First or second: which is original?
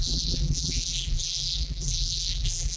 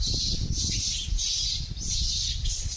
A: second